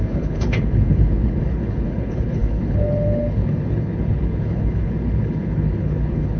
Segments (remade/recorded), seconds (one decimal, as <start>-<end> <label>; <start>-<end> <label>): 0.0-6.4 remade